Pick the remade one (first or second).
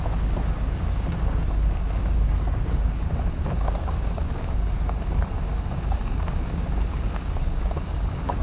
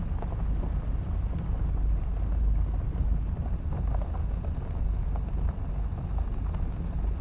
first